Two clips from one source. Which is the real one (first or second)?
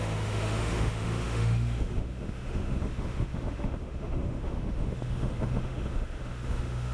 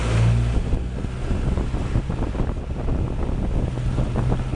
second